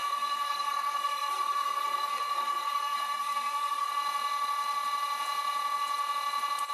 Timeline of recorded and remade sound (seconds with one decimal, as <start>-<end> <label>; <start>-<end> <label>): 0.0-3.9 remade; 3.9-6.7 recorded